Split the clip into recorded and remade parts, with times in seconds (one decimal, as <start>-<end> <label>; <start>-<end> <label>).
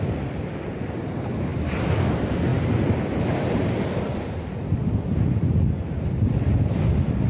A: 0.0-7.3 recorded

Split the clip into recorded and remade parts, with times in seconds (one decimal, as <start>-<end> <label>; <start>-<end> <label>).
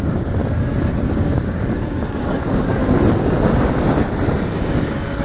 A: 0.0-0.4 remade; 0.4-1.0 recorded; 1.0-2.8 remade; 2.8-4.6 recorded; 4.6-5.2 remade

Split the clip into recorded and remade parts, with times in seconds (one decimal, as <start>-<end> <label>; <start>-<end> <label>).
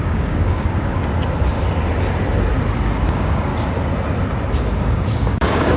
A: 0.0-1.0 remade; 1.0-3.1 recorded; 3.1-3.5 remade; 3.5-4.8 recorded; 4.8-5.8 remade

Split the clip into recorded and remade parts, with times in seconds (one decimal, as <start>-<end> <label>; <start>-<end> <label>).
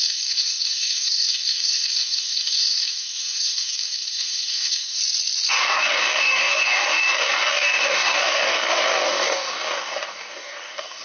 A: 0.0-5.0 remade; 5.0-5.5 recorded; 5.5-11.0 remade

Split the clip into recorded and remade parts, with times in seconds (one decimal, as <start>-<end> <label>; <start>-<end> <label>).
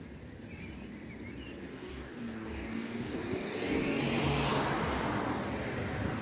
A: 0.0-1.7 recorded; 1.7-4.0 remade; 4.0-6.2 recorded